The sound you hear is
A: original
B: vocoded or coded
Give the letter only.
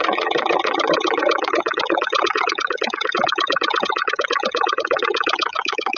B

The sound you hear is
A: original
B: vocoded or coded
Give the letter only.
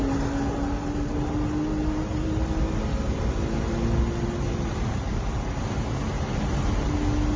A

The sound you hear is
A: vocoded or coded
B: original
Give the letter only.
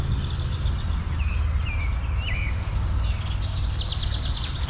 B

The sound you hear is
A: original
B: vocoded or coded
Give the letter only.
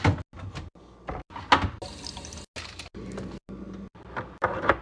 A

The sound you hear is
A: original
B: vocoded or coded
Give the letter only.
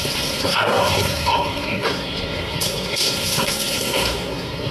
B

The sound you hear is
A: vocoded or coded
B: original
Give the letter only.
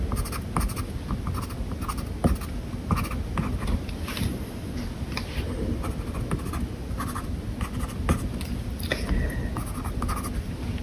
B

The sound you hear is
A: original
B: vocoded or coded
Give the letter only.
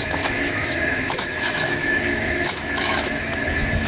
B